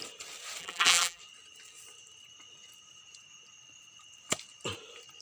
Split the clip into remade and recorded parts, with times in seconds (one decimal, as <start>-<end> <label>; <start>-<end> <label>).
0.0-0.6 recorded; 0.6-1.2 remade; 1.2-5.2 recorded

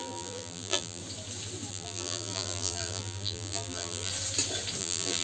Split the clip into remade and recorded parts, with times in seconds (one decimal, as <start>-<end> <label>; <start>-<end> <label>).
0.0-1.0 remade; 1.0-1.7 recorded; 1.7-4.1 remade; 4.1-4.8 recorded; 4.8-5.2 remade

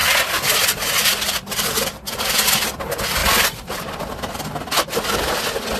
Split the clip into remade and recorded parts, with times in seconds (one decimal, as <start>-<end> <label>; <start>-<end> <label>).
0.0-2.2 remade; 2.2-3.2 recorded; 3.2-5.8 remade